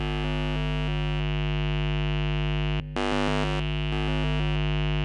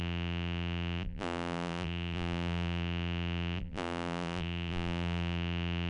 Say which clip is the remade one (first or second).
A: second